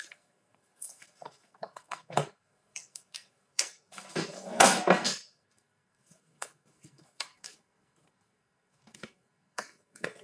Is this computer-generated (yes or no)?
yes